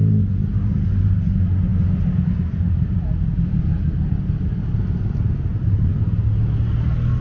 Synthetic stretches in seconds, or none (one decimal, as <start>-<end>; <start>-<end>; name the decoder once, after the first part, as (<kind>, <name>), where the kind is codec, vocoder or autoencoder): none

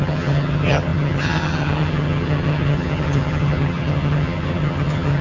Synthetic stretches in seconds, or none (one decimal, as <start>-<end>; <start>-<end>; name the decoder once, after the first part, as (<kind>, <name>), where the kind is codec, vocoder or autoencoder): 0.0-5.2 (vocoder, HiFi-GAN)

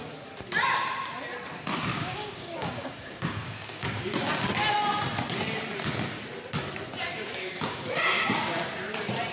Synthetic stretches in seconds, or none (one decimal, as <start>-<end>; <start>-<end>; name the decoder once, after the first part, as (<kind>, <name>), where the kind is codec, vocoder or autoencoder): 1.9-4.0 (codec, DAC); 7.3-7.8